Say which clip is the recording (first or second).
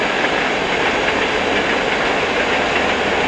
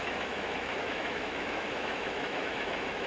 first